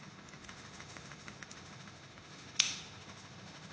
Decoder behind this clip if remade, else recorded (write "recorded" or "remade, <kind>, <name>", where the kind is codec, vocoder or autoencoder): remade, autoencoder, DAC-VAE